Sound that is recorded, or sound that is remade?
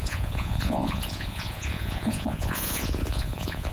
remade